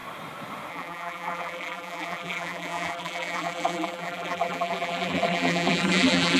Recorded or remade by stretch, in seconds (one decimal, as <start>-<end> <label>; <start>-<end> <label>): 0.0-0.7 recorded; 0.7-6.4 remade